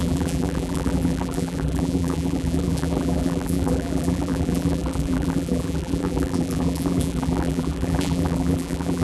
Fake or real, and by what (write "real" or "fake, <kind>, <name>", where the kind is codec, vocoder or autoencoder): fake, vocoder, BigVGAN v2